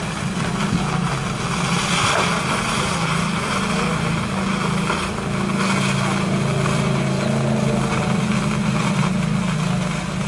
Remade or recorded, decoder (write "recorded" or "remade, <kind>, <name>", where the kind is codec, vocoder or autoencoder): recorded